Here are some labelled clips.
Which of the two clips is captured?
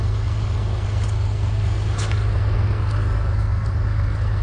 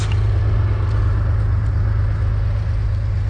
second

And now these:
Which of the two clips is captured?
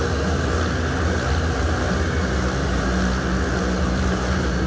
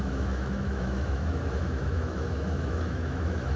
first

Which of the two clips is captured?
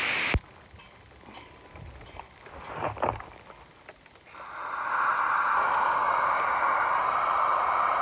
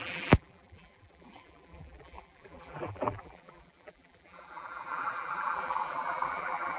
first